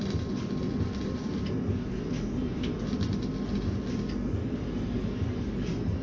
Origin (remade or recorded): recorded